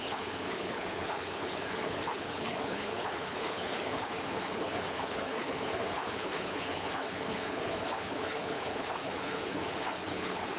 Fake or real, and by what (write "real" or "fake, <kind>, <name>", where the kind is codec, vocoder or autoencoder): fake, codec, HILCodec